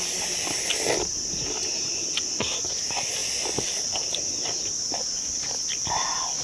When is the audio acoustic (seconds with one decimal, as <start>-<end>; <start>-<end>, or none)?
0.0-6.4